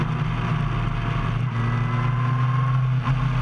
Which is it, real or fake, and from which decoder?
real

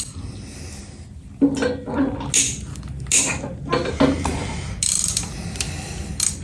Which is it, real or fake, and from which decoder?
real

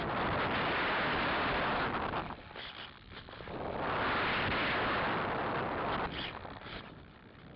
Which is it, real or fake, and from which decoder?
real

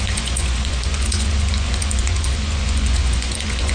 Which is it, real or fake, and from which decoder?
fake, vocoder, Vocos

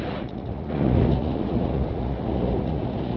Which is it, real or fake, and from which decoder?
fake, vocoder, Vocos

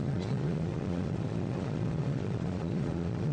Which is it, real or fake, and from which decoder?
fake, vocoder, Vocos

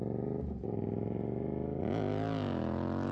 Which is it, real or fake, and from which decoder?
real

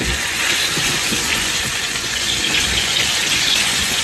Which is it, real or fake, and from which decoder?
fake, vocoder, Vocos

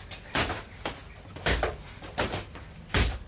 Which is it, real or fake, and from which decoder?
real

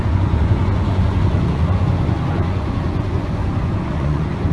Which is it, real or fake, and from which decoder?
fake, vocoder, Vocos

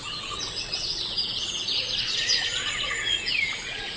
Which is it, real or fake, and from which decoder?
fake, vocoder, Vocos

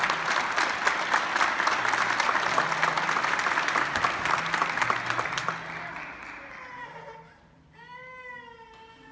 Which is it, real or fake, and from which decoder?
real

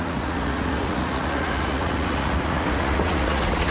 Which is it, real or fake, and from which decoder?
fake, vocoder, Vocos